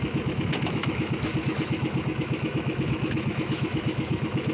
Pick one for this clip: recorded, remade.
remade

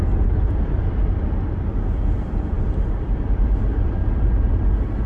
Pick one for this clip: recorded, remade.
recorded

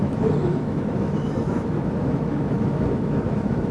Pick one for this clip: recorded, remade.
remade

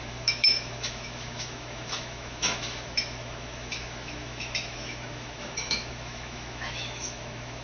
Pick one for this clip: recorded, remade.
remade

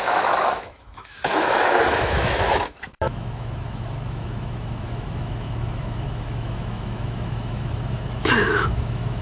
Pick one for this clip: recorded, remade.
remade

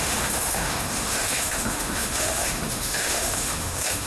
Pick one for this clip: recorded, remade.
remade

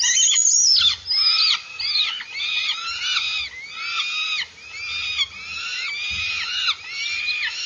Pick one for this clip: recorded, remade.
recorded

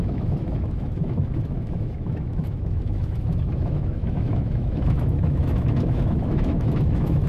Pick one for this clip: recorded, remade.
remade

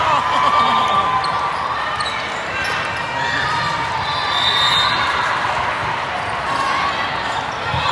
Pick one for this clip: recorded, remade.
recorded